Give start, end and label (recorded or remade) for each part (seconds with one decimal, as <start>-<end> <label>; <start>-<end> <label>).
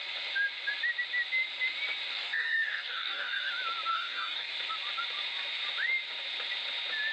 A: 0.0-2.1 recorded; 2.1-3.5 remade; 3.5-3.9 recorded; 3.9-4.5 remade; 4.5-7.1 recorded